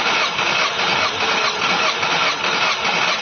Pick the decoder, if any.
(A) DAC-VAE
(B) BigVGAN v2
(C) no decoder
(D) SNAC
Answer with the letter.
C